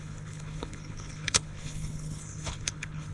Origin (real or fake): fake